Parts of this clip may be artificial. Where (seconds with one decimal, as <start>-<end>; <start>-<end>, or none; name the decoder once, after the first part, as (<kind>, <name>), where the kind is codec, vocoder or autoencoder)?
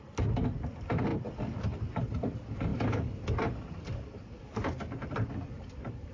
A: none